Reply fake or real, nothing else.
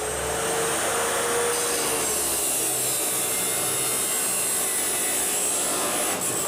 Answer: real